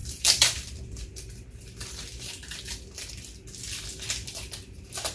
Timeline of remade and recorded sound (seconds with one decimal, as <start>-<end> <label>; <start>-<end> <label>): 0.0-3.1 remade; 3.1-5.1 recorded

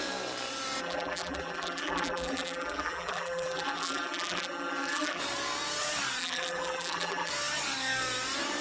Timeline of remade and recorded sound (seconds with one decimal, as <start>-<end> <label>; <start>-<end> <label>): 0.0-0.8 recorded; 0.8-5.2 remade; 5.2-6.2 recorded; 6.2-7.3 remade; 7.3-8.6 recorded